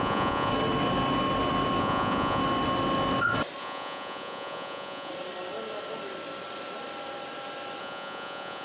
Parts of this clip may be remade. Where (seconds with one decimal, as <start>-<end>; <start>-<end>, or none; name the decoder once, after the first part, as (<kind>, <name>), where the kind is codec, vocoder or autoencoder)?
0.0-0.5 (vocoder, Vocos); 1.8-2.4; 3.6-5.1; 7.8-8.6